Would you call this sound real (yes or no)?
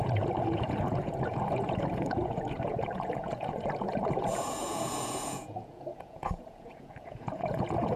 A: no